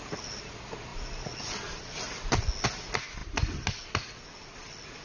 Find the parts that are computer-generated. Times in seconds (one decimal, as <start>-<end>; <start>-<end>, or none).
none